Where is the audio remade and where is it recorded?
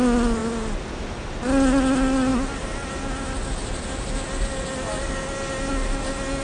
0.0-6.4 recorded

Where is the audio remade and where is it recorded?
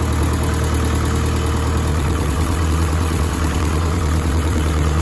0.0-1.9 recorded; 1.9-5.0 remade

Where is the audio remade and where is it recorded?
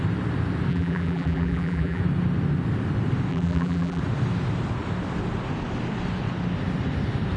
0.0-0.7 recorded; 0.7-2.0 remade; 2.0-3.3 recorded; 3.3-4.0 remade; 4.0-7.4 recorded